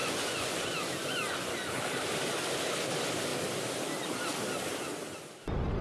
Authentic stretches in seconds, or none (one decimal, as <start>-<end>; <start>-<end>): 1.5-5.8